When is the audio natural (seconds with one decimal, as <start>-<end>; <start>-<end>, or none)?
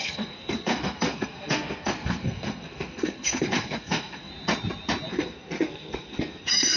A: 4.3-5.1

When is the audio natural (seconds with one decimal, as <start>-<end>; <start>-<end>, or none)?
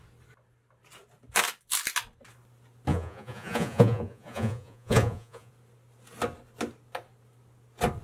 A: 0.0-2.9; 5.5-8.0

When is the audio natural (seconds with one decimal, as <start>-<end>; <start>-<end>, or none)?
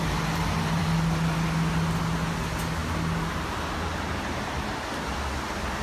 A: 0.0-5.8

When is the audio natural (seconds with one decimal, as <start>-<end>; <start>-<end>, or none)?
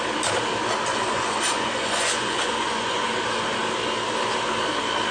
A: 0.0-0.9; 3.1-5.1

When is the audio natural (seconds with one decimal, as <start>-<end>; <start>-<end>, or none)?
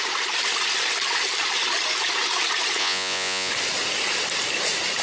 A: 0.0-2.8; 3.5-5.0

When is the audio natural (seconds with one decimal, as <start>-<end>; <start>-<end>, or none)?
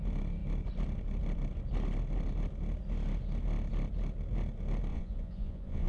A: 0.0-4.9